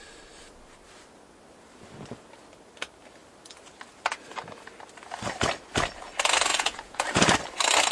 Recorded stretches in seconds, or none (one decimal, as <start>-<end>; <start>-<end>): 0.0-6.5; 7.0-7.9